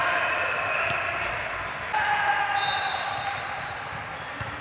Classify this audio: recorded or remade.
recorded